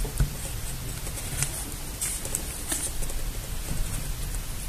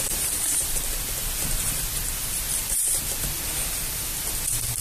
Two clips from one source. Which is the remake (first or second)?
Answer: second